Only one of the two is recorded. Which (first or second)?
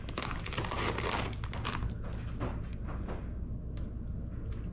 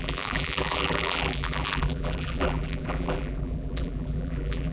first